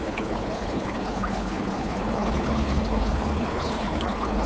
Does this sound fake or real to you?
fake